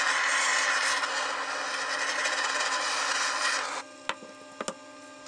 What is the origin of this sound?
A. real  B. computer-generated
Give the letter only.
A